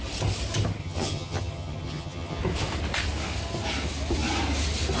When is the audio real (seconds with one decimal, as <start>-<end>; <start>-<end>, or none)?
0.0-0.8; 2.4-5.0